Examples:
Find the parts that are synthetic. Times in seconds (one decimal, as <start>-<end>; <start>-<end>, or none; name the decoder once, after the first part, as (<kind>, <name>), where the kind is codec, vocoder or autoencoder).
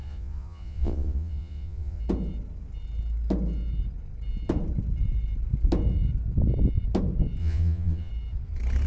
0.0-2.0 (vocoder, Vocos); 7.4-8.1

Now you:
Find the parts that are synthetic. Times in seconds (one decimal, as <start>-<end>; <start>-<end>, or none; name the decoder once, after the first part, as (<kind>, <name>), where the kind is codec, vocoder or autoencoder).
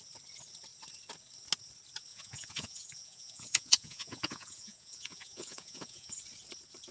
2.1-6.2 (vocoder, Vocos)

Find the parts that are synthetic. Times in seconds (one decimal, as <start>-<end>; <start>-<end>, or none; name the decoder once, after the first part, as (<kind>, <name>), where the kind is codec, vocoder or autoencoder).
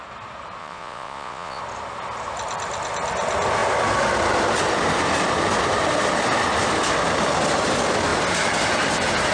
0.6-1.6 (vocoder, Vocos)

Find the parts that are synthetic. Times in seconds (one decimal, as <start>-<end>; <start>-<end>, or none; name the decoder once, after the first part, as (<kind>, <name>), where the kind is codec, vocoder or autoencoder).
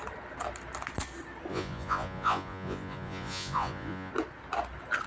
1.5-4.1 (vocoder, Vocos)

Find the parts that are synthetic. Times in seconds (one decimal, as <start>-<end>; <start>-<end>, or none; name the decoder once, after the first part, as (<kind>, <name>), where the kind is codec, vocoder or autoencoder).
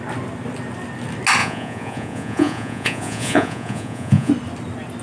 1.4-4.3 (vocoder, Vocos)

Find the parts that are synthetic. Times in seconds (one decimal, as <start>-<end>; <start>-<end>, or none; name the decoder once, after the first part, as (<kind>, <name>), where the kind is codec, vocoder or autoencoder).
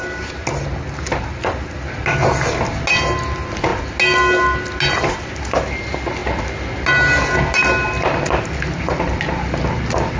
none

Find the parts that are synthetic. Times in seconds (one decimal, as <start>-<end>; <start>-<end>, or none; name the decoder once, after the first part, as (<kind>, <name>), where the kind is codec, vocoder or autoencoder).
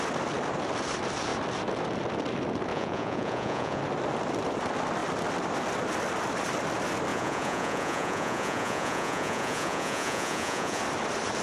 2.7-3.8 (vocoder, Vocos); 7.1-10.8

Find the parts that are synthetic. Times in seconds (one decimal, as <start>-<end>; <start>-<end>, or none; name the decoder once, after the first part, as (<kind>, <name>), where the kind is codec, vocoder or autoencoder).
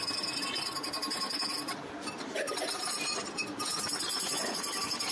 4.1-4.6 (vocoder, Vocos)